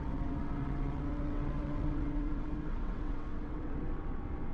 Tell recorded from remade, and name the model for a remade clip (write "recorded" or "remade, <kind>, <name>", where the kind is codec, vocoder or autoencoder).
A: remade, vocoder, WaveNeXt